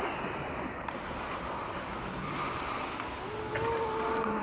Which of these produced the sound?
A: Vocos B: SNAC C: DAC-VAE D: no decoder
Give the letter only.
D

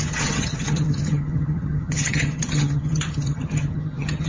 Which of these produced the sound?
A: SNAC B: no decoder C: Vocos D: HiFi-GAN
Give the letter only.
D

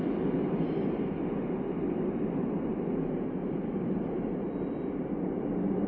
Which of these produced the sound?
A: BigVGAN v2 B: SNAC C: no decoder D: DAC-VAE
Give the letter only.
C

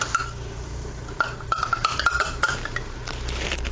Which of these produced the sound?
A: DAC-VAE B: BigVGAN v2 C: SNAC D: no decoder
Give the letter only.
B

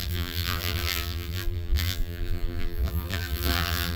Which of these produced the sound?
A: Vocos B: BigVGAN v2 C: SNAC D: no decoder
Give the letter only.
B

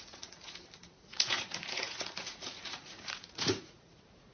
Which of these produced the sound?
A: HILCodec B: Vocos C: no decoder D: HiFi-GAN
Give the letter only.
B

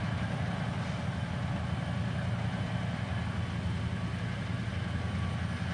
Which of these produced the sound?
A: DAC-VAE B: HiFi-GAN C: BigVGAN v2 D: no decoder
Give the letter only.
D